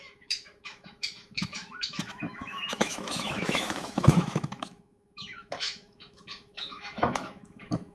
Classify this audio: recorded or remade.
remade